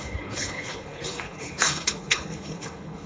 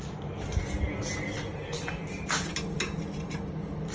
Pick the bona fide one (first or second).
second